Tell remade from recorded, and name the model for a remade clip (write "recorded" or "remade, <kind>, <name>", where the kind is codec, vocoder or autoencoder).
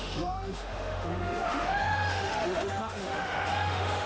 remade, autoencoder, DAC-VAE